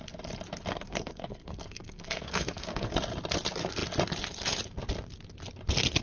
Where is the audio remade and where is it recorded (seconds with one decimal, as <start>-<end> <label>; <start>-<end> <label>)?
0.0-0.7 recorded; 0.7-2.9 remade; 2.9-6.0 recorded